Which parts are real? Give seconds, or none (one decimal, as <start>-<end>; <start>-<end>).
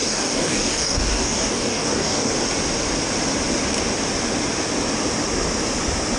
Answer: 2.3-6.2